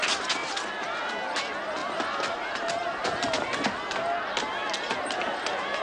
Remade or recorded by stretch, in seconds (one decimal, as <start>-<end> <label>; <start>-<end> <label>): 0.0-0.4 recorded; 0.4-1.1 remade; 1.1-1.8 recorded; 1.8-2.3 remade; 2.3-5.8 recorded